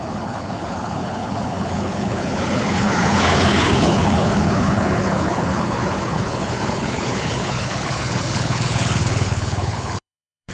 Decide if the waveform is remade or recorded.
remade